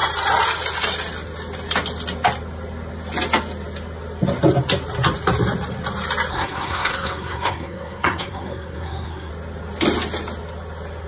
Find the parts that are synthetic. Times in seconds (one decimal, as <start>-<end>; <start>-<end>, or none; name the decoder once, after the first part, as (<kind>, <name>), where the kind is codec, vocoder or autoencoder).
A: 6.3-9.3 (codec, SNAC)